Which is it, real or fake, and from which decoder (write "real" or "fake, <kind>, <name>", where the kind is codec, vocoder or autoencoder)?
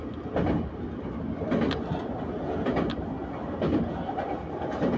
real